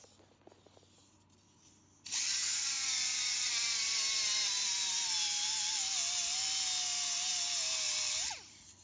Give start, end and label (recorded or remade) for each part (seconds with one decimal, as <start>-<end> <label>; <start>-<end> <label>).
0.0-8.8 recorded